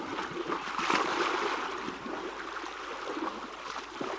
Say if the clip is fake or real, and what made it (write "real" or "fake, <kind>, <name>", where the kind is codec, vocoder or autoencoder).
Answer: real